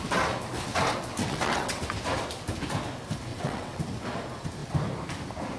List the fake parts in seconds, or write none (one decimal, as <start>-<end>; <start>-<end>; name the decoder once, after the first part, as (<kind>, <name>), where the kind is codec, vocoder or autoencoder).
1.2-1.8 (vocoder, WaveNeXt); 3.3-3.8